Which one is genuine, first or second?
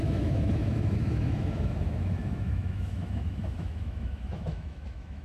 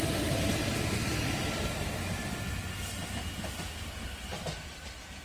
second